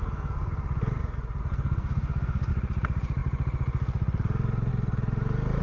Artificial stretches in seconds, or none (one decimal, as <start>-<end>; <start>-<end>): 0.0-0.5; 1.4-2.5